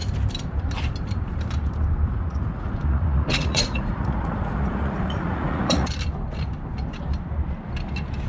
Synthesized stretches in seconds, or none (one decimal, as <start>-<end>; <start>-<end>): 2.1-5.9